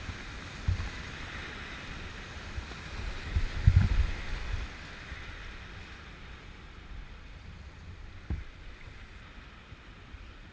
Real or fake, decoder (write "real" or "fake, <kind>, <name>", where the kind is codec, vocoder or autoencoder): real